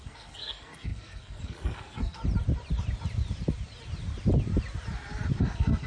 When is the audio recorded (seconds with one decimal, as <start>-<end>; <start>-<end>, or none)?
2.2-5.4